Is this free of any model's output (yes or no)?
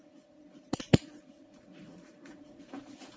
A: no